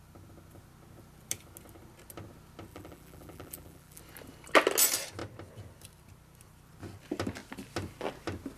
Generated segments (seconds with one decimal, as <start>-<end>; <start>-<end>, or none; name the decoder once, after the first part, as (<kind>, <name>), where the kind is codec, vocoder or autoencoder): 2.7-4.0 (vocoder, BigVGAN v2)